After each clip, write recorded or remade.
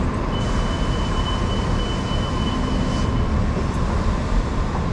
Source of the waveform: recorded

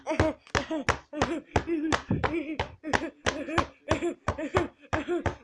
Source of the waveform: recorded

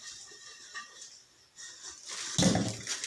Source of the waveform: recorded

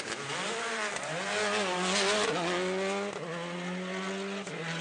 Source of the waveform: recorded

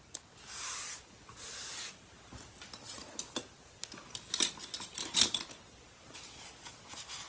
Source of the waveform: recorded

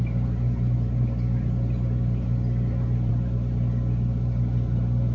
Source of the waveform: recorded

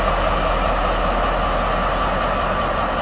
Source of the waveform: recorded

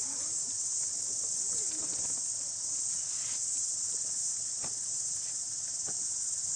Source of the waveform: recorded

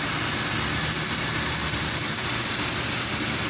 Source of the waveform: recorded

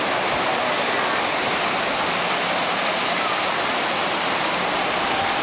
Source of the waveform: recorded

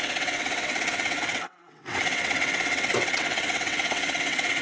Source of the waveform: remade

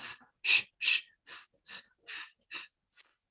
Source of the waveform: recorded